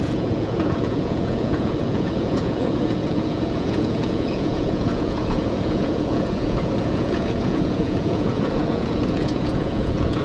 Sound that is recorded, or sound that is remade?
remade